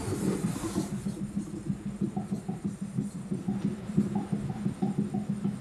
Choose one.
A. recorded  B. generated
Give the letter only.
A